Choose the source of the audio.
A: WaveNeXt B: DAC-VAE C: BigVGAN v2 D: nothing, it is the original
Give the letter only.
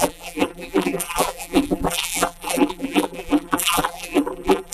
C